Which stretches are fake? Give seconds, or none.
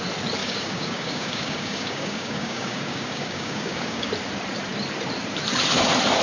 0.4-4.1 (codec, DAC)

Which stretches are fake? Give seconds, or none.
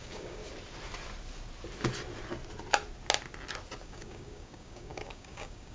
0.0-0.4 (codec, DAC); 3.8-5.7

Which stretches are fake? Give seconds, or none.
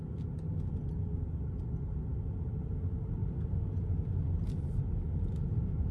none